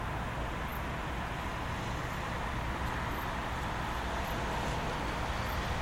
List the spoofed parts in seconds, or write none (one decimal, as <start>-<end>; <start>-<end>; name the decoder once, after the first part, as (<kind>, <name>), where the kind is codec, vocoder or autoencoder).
none